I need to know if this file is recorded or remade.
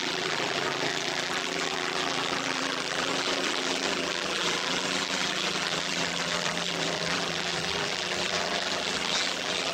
remade